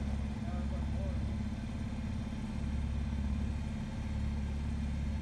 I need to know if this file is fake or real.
real